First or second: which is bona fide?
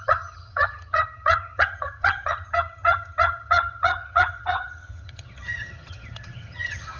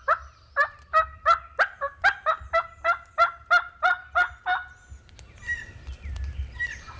second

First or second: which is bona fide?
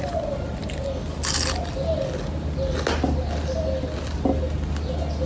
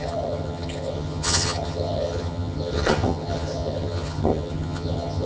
first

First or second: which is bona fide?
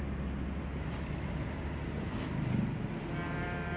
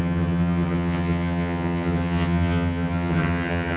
first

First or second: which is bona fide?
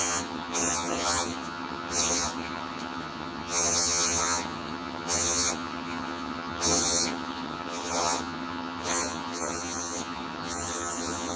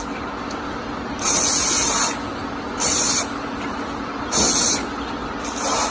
second